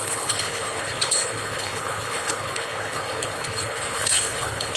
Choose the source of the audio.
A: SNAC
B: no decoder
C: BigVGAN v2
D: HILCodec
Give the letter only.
D